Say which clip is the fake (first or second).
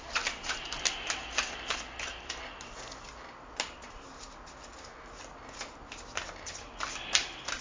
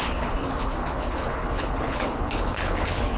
second